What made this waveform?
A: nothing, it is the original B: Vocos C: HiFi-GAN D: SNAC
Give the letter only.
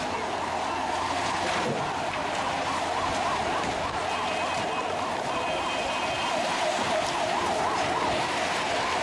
A